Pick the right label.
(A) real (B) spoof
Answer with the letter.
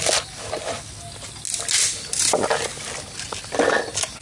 A